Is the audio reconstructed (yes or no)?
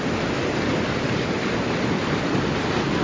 no